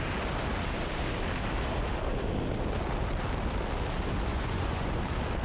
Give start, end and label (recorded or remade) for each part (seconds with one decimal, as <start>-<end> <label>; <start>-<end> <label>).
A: 0.0-4.3 recorded; 4.3-5.0 remade; 5.0-5.4 recorded